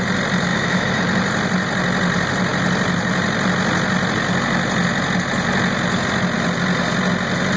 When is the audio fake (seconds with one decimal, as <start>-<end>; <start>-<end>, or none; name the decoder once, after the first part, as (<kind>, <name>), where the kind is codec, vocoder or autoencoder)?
0.5-1.0 (autoencoder, DAC-VAE)